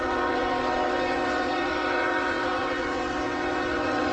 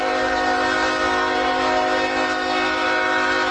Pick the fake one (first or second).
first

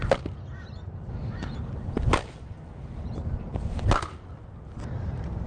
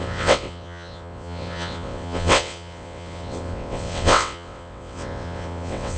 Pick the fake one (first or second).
second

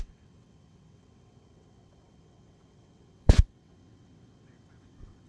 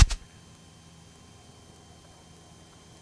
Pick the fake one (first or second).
first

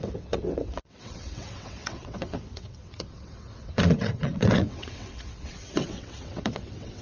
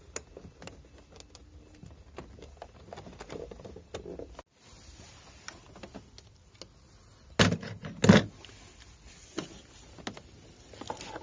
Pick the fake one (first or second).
first